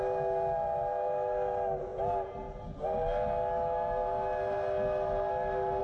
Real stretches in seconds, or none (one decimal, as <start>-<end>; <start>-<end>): 0.0-5.8